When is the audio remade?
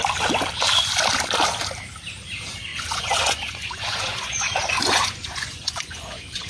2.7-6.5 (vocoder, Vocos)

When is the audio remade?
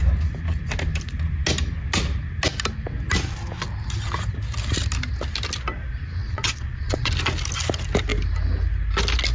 6.2-7.1 (vocoder, Vocos)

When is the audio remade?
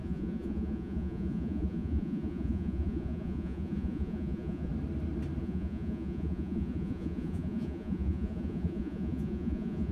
0.0-4.7 (vocoder, Vocos); 5.4-9.9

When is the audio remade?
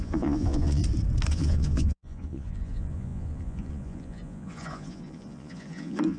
0.0-0.8 (vocoder, Vocos); 1.3-6.2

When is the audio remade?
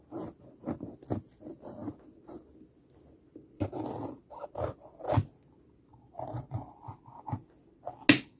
5.9-6.8 (vocoder, Vocos)